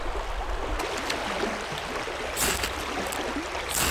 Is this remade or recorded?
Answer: recorded